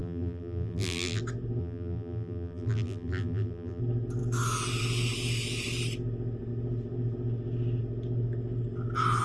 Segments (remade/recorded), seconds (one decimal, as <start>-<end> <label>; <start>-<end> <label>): 0.0-1.2 remade; 1.2-1.6 recorded; 1.6-3.8 remade; 3.8-9.2 recorded